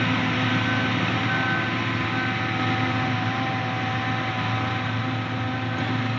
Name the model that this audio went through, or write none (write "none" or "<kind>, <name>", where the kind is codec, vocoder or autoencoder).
none